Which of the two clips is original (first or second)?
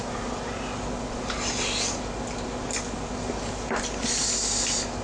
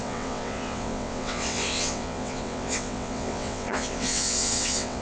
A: first